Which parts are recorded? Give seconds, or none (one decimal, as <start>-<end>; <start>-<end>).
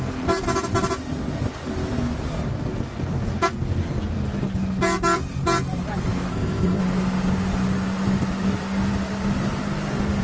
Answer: 0.0-6.3; 6.8-10.2